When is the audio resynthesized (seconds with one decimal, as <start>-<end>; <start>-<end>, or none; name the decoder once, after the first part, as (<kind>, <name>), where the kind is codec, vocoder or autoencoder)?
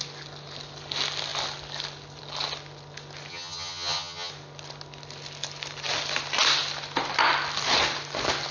3.3-4.3 (vocoder, HiFi-GAN)